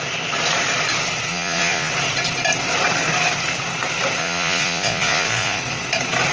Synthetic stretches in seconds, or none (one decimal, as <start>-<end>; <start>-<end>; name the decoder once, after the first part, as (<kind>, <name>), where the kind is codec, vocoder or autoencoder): 1.3-1.9 (vocoder, Vocos); 4.2-5.6